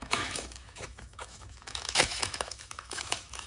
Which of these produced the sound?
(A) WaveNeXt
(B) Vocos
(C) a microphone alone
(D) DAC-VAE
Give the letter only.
D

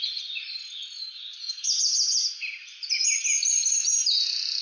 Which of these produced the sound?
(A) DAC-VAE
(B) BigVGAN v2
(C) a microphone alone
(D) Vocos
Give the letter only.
C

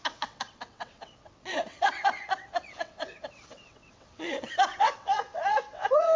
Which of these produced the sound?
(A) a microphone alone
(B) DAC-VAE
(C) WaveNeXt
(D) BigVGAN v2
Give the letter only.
C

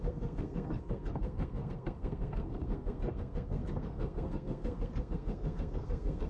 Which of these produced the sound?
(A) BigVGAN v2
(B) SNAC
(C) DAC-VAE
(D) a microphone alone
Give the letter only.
B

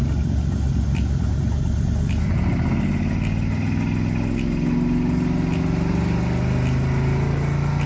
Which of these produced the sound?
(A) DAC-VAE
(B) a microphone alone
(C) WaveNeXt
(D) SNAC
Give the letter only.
B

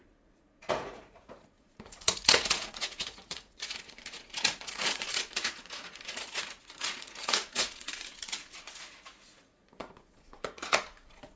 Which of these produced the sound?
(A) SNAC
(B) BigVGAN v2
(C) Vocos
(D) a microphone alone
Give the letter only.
C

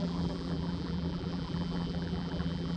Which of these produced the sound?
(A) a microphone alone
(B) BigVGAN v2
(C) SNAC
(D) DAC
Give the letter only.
B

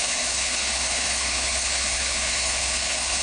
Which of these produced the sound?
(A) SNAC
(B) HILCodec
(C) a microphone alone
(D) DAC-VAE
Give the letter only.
B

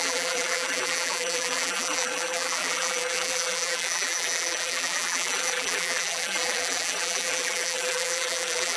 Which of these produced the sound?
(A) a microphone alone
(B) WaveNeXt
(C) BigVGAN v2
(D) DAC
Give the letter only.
C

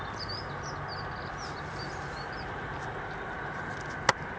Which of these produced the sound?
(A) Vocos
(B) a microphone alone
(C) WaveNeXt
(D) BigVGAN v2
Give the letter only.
B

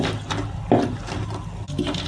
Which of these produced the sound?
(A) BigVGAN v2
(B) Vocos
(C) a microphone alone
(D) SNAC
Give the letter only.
C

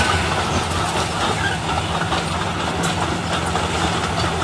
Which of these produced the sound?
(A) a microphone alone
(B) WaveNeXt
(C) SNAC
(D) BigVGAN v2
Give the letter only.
A